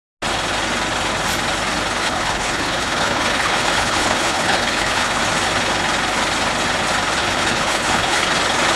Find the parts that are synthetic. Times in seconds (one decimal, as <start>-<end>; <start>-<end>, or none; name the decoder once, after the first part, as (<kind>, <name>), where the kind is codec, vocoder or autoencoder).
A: 2.0-5.2 (codec, HILCodec); 7.2-8.3